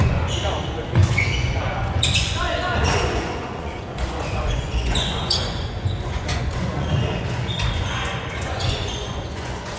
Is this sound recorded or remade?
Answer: remade